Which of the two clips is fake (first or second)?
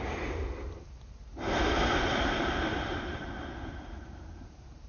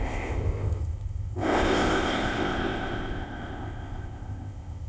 second